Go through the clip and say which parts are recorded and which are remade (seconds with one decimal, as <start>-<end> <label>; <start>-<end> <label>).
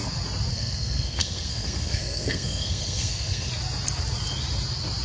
0.0-0.5 recorded; 0.5-3.5 remade; 3.5-5.0 recorded